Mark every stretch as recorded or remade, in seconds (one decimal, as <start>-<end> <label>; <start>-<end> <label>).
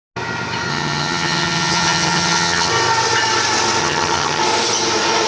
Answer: 0.0-0.7 recorded; 0.7-2.7 remade; 2.7-3.8 recorded; 3.8-4.4 remade; 4.4-5.3 recorded